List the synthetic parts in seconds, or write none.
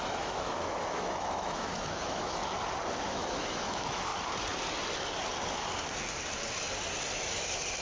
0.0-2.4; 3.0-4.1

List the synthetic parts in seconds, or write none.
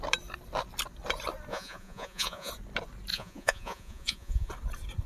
1.5-2.5; 3.1-4.5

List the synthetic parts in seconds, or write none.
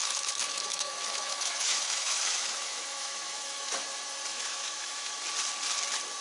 0.0-3.7; 4.3-5.2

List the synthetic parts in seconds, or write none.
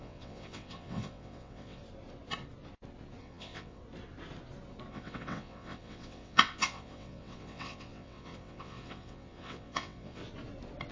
0.0-1.8; 3.2-3.8; 4.9-10.2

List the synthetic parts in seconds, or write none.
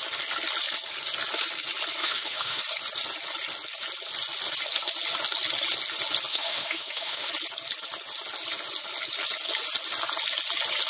2.0-2.6; 6.3-7.3